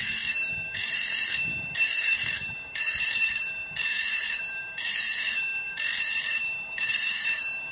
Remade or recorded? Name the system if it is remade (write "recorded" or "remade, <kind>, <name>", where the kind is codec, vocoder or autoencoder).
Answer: remade, autoencoder, DAC-VAE